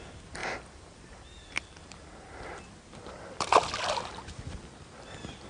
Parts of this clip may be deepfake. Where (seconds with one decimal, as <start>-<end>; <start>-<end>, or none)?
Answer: none